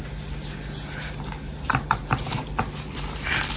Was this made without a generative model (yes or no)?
yes